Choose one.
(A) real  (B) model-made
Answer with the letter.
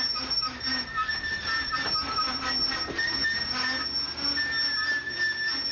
A